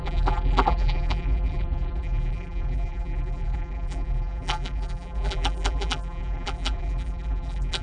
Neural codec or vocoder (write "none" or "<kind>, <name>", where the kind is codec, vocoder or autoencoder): vocoder, BigVGAN v2